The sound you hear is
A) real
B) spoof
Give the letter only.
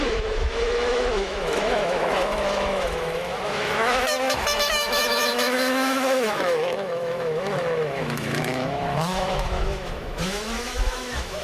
B